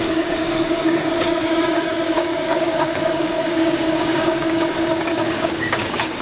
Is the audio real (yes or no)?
no